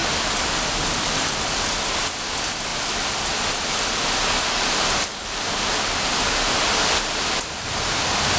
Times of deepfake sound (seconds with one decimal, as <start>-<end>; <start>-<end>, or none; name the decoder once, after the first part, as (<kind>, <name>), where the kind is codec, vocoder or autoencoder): 0.0-2.1 (vocoder, BigVGAN v2); 2.7-4.6